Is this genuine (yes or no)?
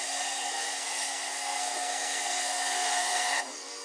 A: no